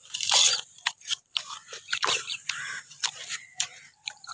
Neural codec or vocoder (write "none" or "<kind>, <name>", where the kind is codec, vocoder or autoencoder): vocoder, BigVGAN v2